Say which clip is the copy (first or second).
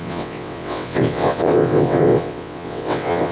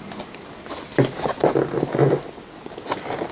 first